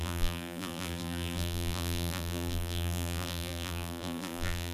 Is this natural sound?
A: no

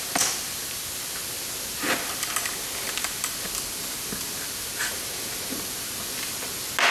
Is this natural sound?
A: yes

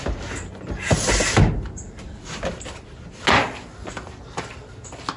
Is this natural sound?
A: yes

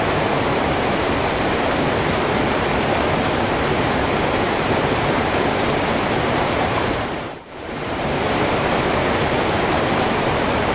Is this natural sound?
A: no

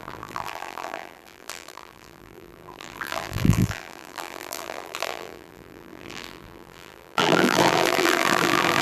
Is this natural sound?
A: no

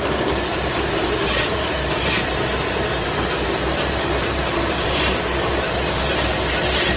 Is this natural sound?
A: no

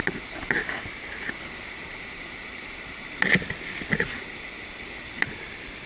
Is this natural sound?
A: no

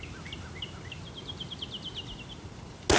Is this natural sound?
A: yes